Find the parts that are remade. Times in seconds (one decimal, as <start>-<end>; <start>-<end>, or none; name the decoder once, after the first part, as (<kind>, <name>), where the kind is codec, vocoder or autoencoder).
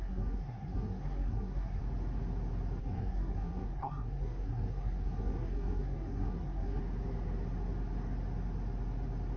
0.0-1.8 (codec, SNAC); 2.8-6.8